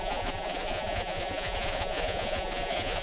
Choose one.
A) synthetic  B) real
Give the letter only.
A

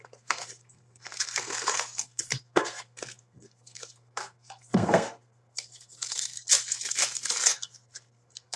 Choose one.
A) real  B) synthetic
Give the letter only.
B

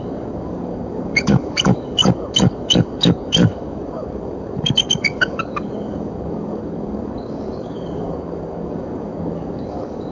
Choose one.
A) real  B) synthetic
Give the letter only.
B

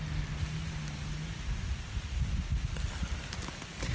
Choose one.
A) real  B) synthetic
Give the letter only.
A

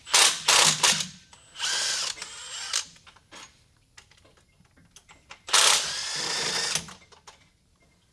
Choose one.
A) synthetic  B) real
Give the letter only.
B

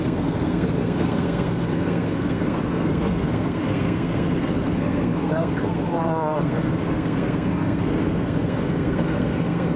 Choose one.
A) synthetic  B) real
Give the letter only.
A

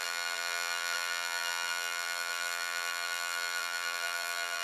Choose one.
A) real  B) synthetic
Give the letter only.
B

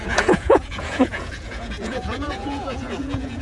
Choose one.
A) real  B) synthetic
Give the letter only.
B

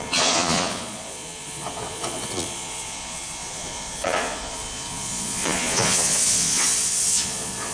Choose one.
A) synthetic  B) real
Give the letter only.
A